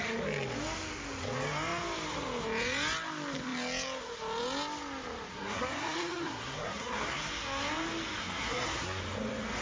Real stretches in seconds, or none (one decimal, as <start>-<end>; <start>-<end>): 0.0-5.3; 7.2-8.2; 9.0-9.6